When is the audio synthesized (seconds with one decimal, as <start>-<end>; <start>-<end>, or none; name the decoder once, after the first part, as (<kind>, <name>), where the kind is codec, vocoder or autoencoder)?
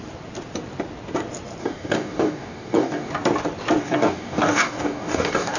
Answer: 1.6-3.1 (codec, DAC); 3.8-5.6